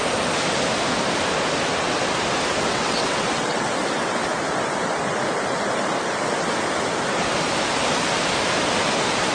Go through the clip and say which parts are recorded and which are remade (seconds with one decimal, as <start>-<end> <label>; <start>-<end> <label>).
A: 0.0-2.7 recorded; 2.7-3.7 remade; 3.7-9.3 recorded

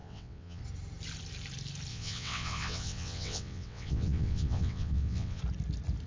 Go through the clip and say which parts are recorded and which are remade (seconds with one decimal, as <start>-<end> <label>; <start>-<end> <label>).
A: 0.0-0.6 remade; 0.6-1.9 recorded; 1.9-5.4 remade; 5.4-6.1 recorded

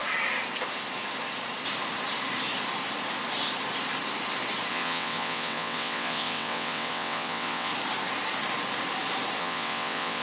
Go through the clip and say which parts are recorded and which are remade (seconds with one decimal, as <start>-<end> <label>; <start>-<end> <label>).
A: 0.0-4.7 recorded; 4.7-7.7 remade; 7.7-9.4 recorded; 9.4-10.2 remade

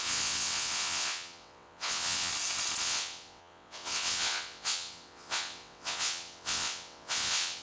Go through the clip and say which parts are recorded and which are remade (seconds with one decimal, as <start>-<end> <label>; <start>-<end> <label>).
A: 0.0-2.3 remade; 2.3-2.8 recorded; 2.8-7.6 remade

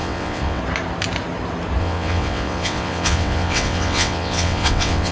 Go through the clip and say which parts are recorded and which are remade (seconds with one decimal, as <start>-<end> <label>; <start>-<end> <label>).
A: 0.0-0.6 remade; 0.6-1.8 recorded; 1.8-5.1 remade

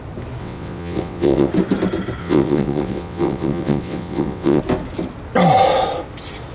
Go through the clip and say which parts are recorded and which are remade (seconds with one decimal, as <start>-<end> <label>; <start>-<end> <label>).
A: 0.0-0.4 recorded; 0.4-1.5 remade; 1.5-2.2 recorded; 2.2-4.6 remade; 4.6-6.5 recorded

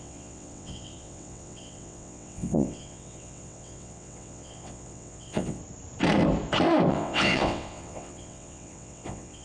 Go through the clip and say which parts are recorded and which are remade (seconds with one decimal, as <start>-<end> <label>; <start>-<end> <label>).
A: 0.0-5.6 remade; 5.6-6.9 recorded; 6.9-9.4 remade